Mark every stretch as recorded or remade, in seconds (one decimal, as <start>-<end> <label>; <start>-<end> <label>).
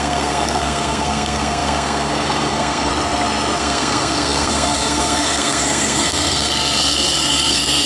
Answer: 0.0-2.9 remade; 2.9-3.6 recorded; 3.6-7.9 remade